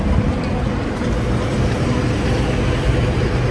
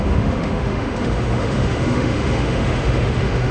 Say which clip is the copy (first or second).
second